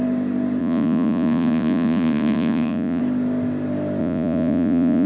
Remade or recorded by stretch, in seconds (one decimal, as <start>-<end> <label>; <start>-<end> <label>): 0.0-0.6 recorded; 0.6-3.0 remade; 3.0-4.0 recorded; 4.0-5.1 remade